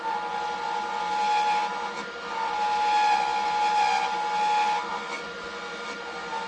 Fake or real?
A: real